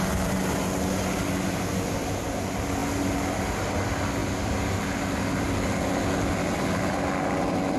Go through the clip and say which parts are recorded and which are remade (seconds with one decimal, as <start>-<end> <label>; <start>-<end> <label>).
0.0-7.8 recorded